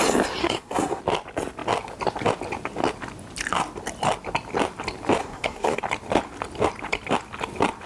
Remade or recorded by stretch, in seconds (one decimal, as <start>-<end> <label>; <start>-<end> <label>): 0.0-0.4 recorded; 0.4-1.0 remade; 1.0-5.2 recorded; 5.2-5.8 remade; 5.8-7.9 recorded